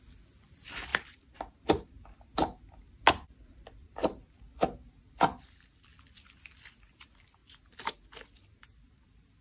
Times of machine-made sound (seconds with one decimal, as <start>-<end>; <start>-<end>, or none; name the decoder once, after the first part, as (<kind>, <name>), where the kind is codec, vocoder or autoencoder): 0.0-0.9 (vocoder, BigVGAN v2); 3.1-4.0; 5.1-7.4; 7.9-9.4